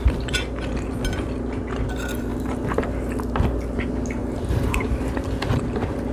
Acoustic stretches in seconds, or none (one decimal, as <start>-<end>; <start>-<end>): 0.0-2.3; 2.8-4.2; 4.9-6.1